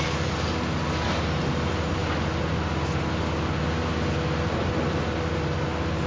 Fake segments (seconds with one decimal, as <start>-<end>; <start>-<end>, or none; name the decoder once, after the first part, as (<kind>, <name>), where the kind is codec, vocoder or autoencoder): none